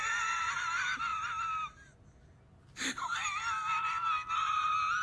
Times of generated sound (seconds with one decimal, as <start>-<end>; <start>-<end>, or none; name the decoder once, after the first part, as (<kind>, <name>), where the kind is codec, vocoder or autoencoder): none